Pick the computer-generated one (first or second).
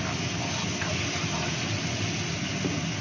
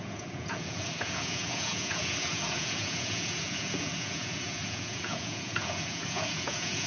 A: second